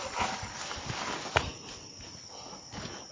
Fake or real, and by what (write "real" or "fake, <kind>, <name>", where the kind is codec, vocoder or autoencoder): real